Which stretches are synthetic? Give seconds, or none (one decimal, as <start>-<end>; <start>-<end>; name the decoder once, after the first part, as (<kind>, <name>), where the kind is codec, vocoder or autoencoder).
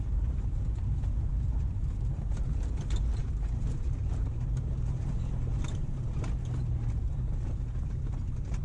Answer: 0.0-8.6 (vocoder, BigVGAN v2)